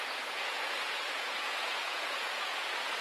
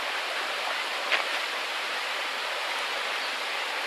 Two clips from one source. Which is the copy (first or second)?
first